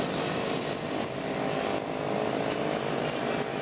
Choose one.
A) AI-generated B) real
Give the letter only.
B